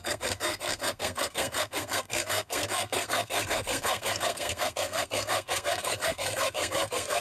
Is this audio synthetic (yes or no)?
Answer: yes